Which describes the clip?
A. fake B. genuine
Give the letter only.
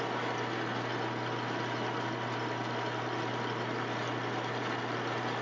B